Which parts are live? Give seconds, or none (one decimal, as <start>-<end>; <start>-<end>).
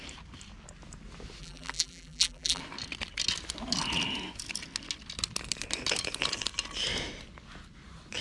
0.0-1.4; 2.6-8.2